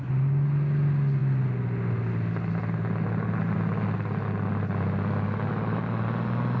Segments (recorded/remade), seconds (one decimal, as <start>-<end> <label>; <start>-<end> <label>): 0.0-6.6 recorded